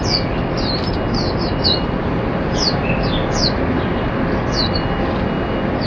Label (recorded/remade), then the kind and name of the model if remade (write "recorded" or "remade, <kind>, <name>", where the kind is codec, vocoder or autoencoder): recorded